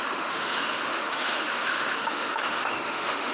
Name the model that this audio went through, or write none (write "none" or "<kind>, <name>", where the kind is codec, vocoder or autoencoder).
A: autoencoder, DAC-VAE